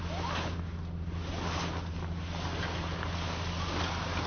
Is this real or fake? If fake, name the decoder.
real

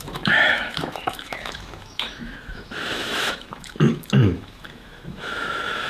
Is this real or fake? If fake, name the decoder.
fake, autoencoder, DAC-VAE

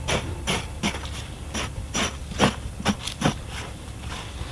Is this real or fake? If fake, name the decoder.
real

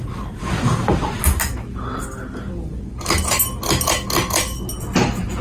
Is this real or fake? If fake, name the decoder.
real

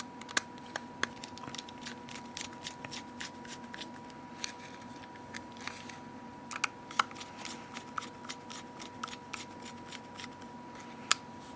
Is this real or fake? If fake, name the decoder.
real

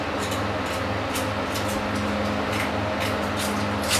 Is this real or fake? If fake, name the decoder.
real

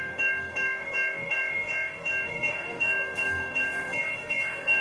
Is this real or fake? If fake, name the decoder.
fake, autoencoder, DAC-VAE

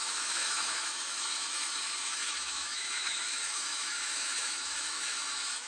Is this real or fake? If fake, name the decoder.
fake, autoencoder, DAC-VAE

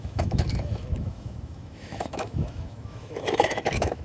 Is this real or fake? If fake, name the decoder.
fake, autoencoder, DAC-VAE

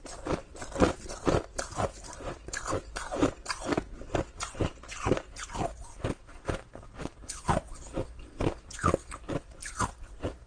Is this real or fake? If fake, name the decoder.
real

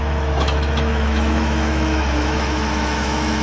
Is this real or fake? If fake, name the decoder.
fake, autoencoder, DAC-VAE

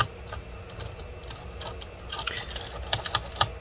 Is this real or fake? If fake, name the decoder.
real